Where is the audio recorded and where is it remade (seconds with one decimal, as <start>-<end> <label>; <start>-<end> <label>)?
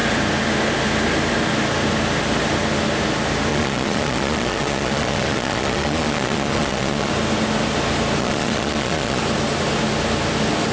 0.0-3.5 recorded; 3.5-7.1 remade; 7.1-8.2 recorded; 8.2-9.2 remade; 9.2-10.7 recorded